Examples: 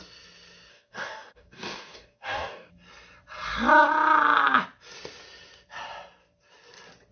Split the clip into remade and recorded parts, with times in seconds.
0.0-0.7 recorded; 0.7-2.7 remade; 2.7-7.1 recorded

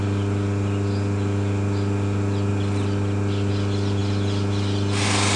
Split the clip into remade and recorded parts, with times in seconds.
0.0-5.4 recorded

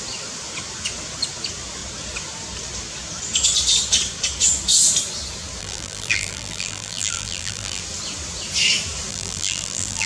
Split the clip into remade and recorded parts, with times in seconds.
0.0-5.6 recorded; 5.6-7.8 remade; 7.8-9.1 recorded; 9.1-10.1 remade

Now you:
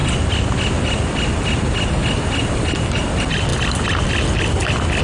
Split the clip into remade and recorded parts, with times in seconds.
0.0-5.0 recorded

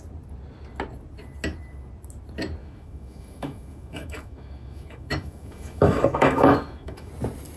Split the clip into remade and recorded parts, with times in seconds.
0.0-2.6 recorded; 2.6-7.1 remade; 7.1-7.6 recorded

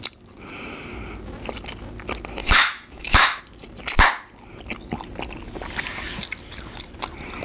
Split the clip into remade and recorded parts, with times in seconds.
0.0-2.4 recorded; 2.4-3.4 remade; 3.4-7.4 recorded